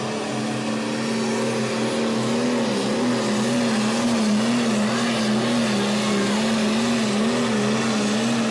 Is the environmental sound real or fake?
real